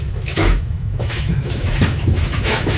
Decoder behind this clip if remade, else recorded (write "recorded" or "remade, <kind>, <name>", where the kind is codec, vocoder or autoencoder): remade, autoencoder, DAC-VAE